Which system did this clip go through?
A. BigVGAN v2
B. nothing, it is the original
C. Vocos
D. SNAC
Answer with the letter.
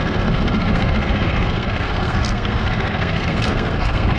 D